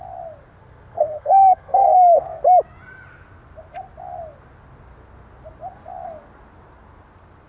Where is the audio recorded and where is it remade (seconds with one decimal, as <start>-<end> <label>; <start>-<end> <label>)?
0.0-0.6 recorded; 0.6-2.4 remade; 2.4-7.5 recorded

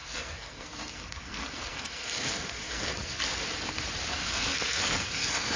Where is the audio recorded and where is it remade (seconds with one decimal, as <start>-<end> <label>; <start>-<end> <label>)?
0.0-3.2 remade; 3.2-4.1 recorded; 4.1-5.6 remade

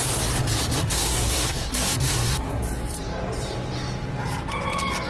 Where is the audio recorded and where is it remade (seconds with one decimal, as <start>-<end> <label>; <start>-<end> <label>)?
0.0-0.8 recorded; 0.8-2.6 remade; 2.6-5.1 recorded

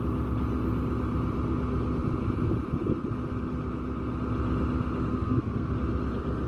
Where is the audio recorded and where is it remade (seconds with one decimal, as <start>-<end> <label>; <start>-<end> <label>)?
0.0-5.1 recorded; 5.1-5.7 remade; 5.7-6.5 recorded

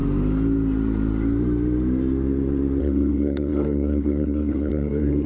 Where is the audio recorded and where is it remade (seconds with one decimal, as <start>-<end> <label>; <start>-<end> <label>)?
0.0-2.8 recorded; 2.8-5.3 remade

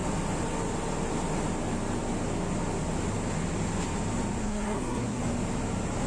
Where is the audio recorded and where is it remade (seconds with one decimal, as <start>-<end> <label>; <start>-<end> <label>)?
0.0-4.4 recorded; 4.4-5.2 remade; 5.2-6.1 recorded

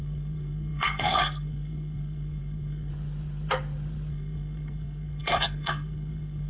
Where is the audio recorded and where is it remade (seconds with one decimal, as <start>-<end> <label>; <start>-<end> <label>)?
0.0-2.9 remade; 2.9-4.1 recorded; 4.1-6.5 remade

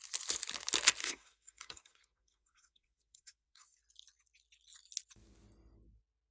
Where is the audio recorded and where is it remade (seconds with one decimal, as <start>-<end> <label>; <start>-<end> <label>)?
0.0-1.0 recorded; 1.0-3.8 remade; 3.8-6.3 recorded